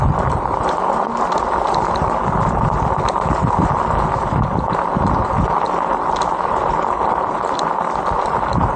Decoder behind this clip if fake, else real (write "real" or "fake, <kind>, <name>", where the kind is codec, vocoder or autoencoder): real